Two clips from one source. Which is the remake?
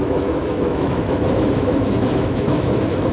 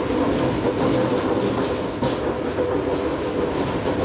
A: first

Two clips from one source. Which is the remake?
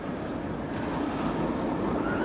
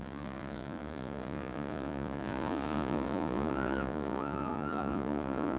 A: second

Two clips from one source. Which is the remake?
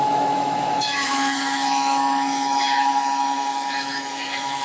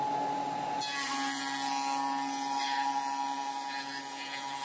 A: first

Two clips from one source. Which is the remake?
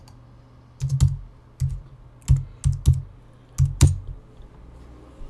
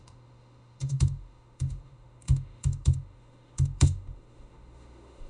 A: second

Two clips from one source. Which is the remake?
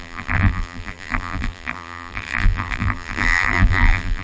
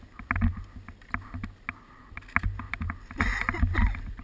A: first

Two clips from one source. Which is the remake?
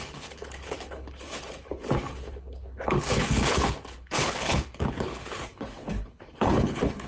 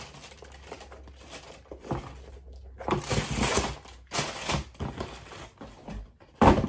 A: first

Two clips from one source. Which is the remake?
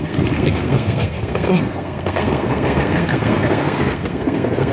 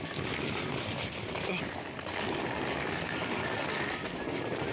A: first